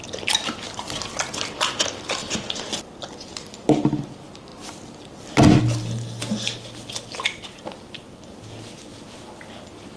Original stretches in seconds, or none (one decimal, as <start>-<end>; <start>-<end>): 0.0-10.0